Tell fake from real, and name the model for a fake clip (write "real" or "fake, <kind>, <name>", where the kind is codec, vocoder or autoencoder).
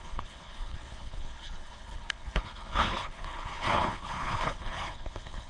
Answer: fake, codec, HILCodec